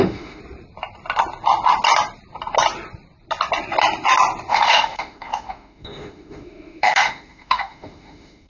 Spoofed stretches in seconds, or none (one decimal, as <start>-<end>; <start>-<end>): 0.0-0.4; 4.5-8.5